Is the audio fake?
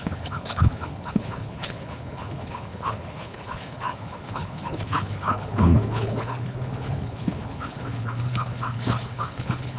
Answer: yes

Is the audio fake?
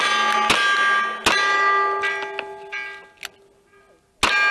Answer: no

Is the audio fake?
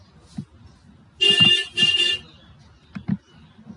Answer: no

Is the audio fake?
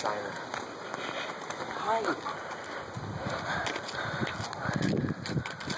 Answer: no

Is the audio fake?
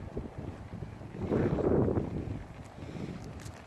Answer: no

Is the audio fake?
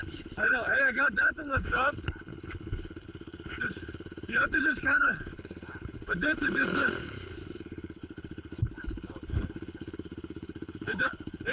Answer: yes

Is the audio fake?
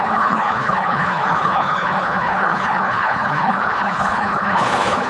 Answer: yes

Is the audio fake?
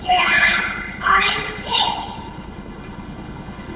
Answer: yes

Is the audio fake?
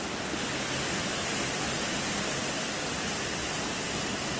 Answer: no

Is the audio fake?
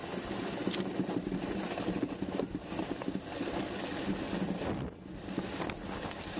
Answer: no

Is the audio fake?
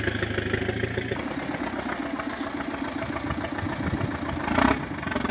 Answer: no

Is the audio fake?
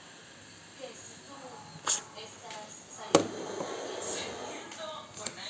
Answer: no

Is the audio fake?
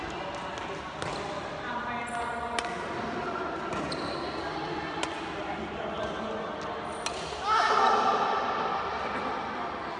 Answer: no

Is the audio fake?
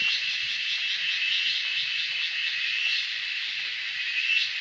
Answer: no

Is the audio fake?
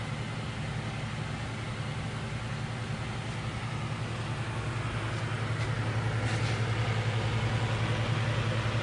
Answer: no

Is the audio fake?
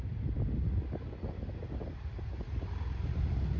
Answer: no